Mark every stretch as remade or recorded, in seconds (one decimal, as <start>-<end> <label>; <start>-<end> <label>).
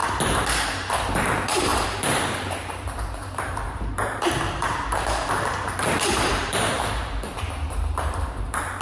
0.0-8.8 remade